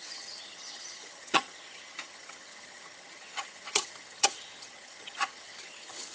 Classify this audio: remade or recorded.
remade